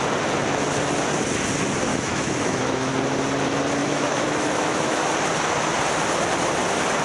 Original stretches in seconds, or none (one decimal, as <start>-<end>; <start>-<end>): 0.0-1.9; 2.9-3.8; 5.1-7.0